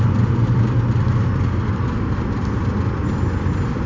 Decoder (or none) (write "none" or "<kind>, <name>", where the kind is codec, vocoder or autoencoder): none